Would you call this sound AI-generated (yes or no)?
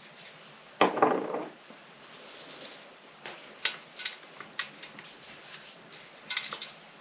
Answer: no